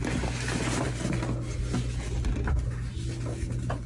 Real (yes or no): yes